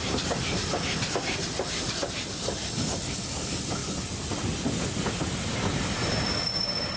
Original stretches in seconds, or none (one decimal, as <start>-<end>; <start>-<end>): 0.0-3.8; 4.9-7.0